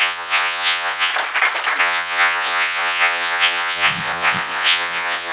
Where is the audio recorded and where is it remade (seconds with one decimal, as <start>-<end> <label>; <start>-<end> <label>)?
0.0-1.1 remade; 1.1-1.8 recorded; 1.8-5.3 remade